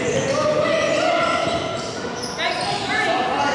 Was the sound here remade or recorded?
recorded